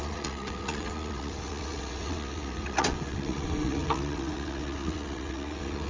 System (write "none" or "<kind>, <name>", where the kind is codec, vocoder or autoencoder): vocoder, WaveNeXt